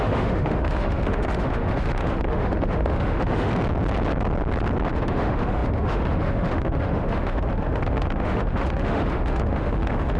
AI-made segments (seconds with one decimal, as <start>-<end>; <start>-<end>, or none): 0.0-3.5; 4.9-10.2